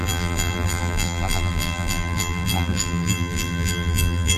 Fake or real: fake